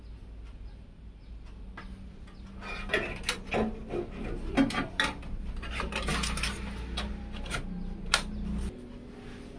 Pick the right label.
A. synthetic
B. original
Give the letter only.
B